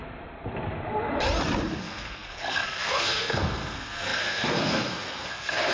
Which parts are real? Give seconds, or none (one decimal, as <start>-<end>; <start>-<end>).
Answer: 0.0-1.8